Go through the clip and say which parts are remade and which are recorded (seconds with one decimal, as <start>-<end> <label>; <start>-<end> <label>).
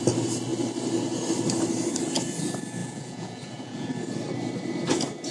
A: 0.0-2.8 recorded; 2.8-3.9 remade; 3.9-5.3 recorded